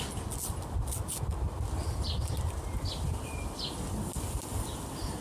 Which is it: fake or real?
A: real